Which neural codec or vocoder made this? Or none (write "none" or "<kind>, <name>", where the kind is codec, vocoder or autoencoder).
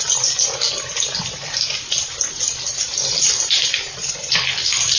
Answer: none